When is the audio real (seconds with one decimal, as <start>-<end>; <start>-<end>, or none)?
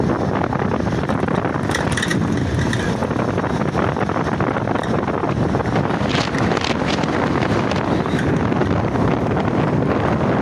0.0-10.4